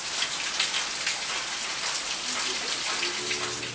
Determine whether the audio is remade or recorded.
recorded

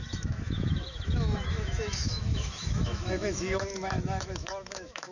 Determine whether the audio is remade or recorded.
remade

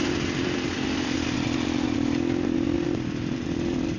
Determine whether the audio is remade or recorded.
recorded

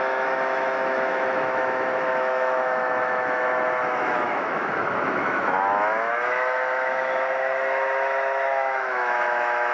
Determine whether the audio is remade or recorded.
remade